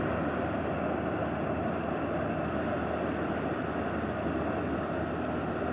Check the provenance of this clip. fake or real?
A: real